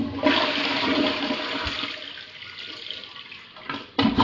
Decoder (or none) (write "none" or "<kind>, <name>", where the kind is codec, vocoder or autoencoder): none